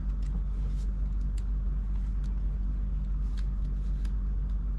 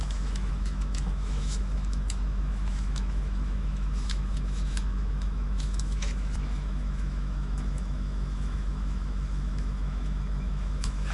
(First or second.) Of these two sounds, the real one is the first